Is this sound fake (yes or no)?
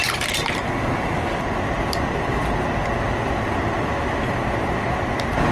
no